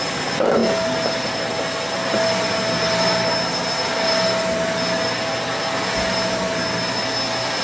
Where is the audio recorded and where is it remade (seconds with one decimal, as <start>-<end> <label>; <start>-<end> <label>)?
0.0-7.6 recorded